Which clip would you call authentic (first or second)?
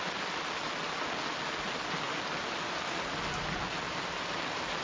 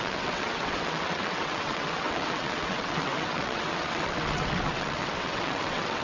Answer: first